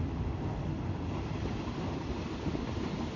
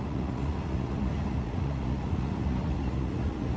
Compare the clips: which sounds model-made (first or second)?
second